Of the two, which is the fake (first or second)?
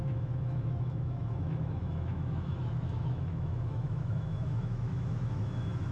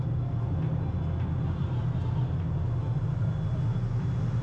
first